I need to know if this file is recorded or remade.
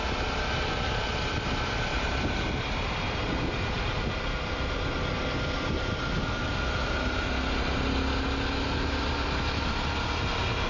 recorded